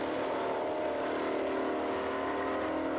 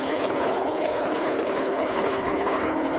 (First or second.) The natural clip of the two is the first